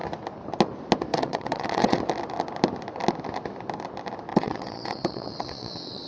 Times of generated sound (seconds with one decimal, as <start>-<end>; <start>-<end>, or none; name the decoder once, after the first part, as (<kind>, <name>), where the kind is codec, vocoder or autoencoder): 1.1-2.0 (vocoder, WaveNeXt); 4.3-6.1